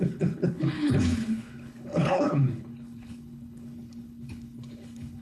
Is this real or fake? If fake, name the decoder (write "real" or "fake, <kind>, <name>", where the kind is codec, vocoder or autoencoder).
fake, codec, HILCodec